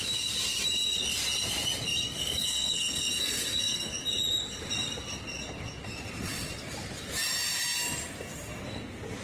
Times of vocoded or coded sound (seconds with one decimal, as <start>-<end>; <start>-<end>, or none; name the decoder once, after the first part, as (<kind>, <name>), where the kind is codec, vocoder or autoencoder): 1.9-3.9 (codec, SNAC)